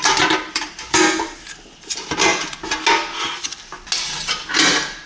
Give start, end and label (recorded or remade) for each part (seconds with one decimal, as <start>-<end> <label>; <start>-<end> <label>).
0.0-2.3 remade; 2.3-4.3 recorded; 4.3-5.1 remade